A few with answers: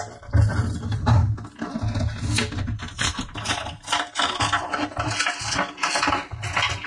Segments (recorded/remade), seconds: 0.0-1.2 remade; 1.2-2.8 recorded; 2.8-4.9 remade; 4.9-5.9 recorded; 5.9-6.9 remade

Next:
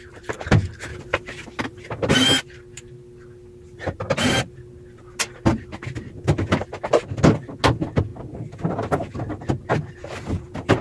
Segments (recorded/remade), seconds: 0.0-10.8 recorded

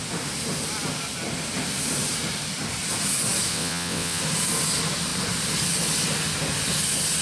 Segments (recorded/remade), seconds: 0.0-3.5 recorded; 3.5-4.2 remade; 4.2-7.2 recorded

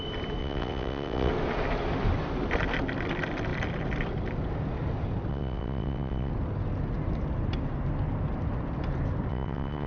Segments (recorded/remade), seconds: 0.0-0.4 recorded; 0.4-1.3 remade; 1.3-5.3 recorded; 5.3-6.3 remade; 6.3-9.3 recorded; 9.3-9.9 remade

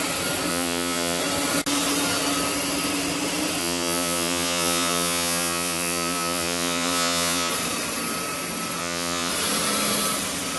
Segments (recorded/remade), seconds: 0.0-0.5 recorded; 0.5-1.2 remade; 1.2-3.6 recorded; 3.6-7.5 remade; 7.5-8.8 recorded; 8.8-9.3 remade; 9.3-10.6 recorded

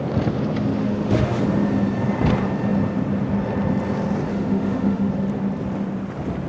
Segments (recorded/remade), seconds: 0.0-0.8 recorded; 0.8-1.4 remade; 1.4-4.3 recorded; 4.3-5.1 remade; 5.1-6.5 recorded

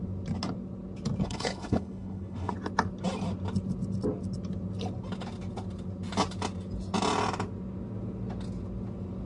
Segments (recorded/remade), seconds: 0.0-1.2 recorded; 1.2-2.5 remade; 2.5-9.3 recorded